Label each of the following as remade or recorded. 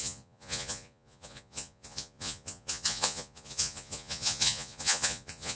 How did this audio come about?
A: remade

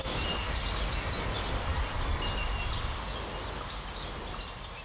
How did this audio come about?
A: recorded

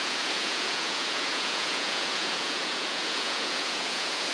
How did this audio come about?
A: remade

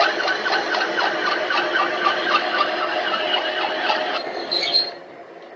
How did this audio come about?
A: recorded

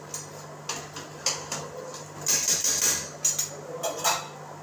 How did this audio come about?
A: recorded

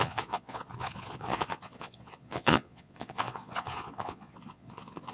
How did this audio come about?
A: remade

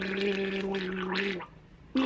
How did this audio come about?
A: recorded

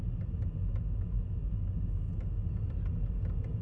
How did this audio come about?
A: recorded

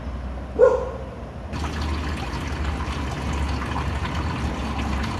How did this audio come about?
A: recorded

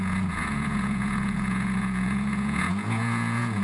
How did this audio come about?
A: remade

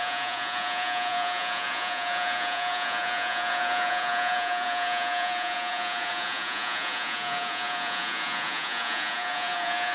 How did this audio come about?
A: remade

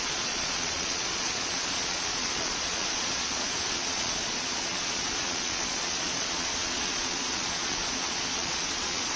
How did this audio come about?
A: remade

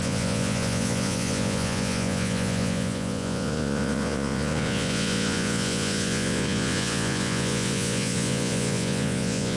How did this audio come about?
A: remade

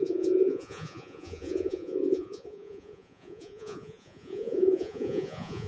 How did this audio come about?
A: remade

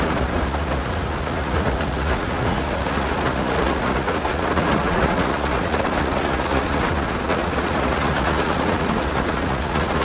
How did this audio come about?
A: remade